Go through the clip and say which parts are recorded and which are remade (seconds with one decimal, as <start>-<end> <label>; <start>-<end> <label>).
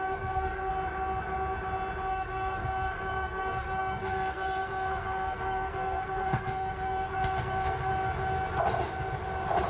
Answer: 0.0-0.7 remade; 0.7-2.1 recorded; 2.1-7.9 remade; 7.9-9.7 recorded